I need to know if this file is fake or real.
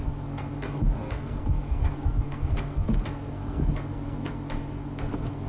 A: fake